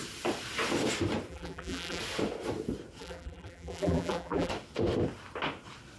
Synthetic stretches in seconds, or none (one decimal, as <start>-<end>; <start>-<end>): 1.3-2.0; 3.0-4.5